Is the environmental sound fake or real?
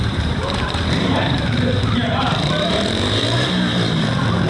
fake